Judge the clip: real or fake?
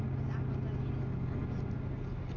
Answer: real